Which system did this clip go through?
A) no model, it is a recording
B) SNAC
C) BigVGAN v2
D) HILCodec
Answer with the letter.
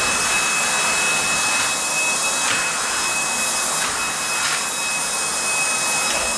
A